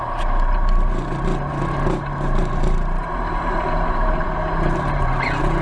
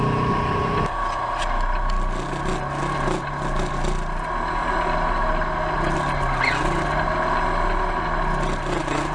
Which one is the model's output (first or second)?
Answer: first